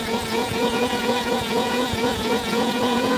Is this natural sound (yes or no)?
no